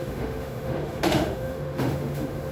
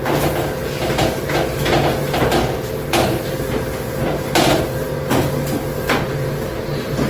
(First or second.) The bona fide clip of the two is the second